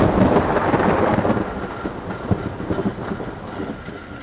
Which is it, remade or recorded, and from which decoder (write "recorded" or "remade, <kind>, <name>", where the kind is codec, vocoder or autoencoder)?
recorded